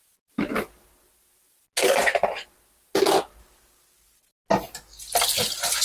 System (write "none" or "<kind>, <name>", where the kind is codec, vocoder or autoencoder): none